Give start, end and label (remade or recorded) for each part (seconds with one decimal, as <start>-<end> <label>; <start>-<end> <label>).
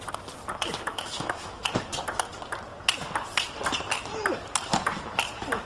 0.0-0.9 recorded; 0.9-1.6 remade; 1.6-5.7 recorded